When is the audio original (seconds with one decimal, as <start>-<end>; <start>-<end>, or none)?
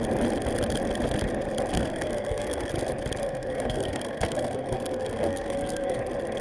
0.0-1.7; 2.7-3.2; 6.0-6.4